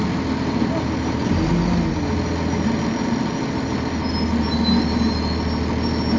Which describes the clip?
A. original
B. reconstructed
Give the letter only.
A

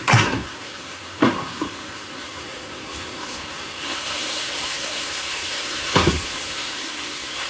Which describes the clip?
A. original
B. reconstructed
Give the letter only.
B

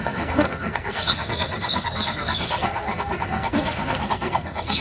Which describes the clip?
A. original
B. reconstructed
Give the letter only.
B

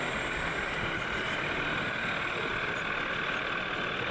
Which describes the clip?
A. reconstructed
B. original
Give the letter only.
B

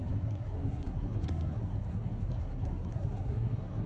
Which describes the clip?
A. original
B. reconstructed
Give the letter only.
B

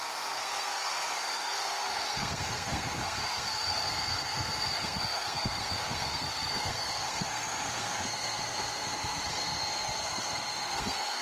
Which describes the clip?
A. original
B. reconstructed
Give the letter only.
B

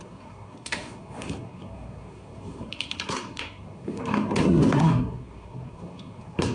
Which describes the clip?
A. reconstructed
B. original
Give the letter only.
A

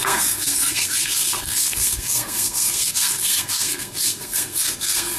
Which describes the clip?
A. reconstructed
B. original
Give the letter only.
A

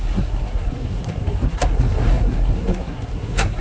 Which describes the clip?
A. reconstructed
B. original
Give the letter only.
A